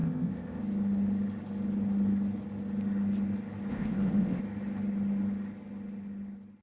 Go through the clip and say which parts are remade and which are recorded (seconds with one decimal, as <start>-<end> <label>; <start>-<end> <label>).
0.0-0.6 remade; 0.6-3.7 recorded; 3.7-4.4 remade; 4.4-6.6 recorded